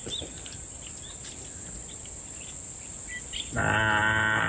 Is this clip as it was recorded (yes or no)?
yes